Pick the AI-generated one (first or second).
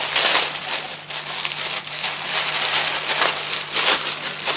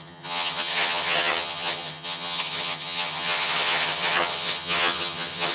second